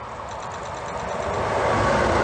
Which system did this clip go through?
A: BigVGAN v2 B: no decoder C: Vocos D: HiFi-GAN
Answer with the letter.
B